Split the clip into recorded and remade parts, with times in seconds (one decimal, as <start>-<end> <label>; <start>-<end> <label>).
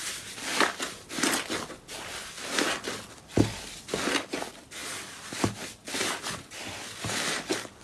0.0-7.8 recorded